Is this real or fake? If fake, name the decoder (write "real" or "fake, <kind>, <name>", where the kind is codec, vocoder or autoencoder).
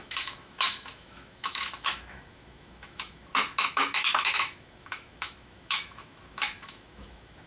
fake, autoencoder, DAC-VAE